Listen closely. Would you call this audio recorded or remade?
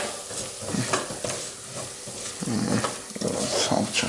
recorded